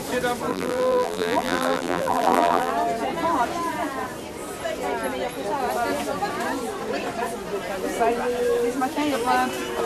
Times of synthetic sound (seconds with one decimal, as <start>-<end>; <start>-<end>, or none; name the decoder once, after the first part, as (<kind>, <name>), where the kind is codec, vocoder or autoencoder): 0.5-2.7 (vocoder, BigVGAN v2)